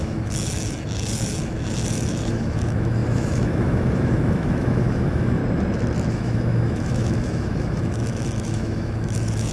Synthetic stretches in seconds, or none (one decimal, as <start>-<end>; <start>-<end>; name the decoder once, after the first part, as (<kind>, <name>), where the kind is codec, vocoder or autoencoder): 0.0-5.4 (autoencoder, DAC-VAE); 6.1-9.5